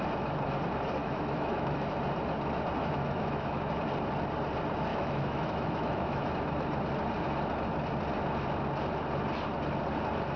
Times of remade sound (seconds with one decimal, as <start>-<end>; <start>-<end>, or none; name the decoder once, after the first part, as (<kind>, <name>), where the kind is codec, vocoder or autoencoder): 1.0-2.0 (autoencoder, DAC-VAE); 2.8-3.7; 4.9-6.3